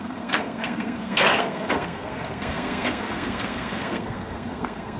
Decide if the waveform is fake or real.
fake